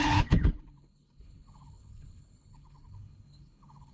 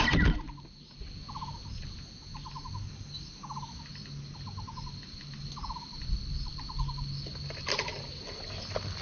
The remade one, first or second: first